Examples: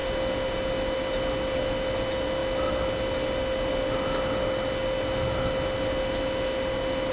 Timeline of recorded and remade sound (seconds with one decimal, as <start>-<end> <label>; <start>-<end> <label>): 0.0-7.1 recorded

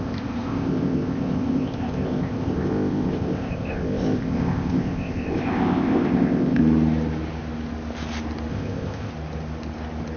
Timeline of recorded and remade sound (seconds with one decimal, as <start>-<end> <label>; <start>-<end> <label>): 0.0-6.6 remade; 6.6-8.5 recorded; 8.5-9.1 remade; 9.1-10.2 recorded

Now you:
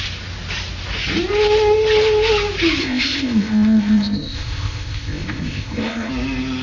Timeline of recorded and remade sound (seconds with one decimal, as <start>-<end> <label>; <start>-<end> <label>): 0.0-2.8 recorded; 2.8-6.1 remade; 6.1-6.6 recorded